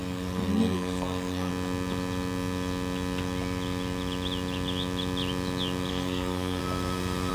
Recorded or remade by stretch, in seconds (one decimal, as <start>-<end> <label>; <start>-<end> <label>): 0.0-1.5 remade; 1.5-5.9 recorded; 5.9-6.6 remade; 6.6-7.3 recorded